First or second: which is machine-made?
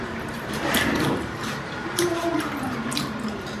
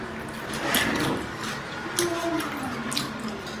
first